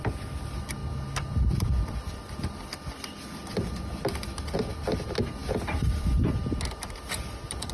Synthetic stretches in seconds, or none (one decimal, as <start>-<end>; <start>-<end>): none